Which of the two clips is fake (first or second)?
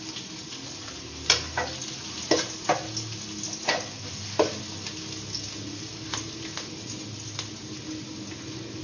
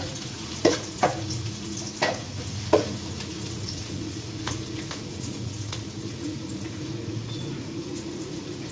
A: second